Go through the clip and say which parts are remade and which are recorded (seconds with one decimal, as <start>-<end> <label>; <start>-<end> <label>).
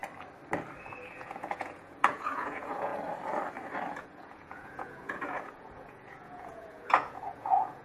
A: 0.0-0.8 recorded; 0.8-2.9 remade; 2.9-3.9 recorded; 3.9-7.8 remade